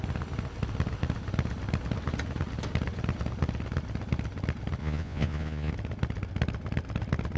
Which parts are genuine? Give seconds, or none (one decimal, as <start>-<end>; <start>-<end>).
0.0-4.8; 5.7-7.4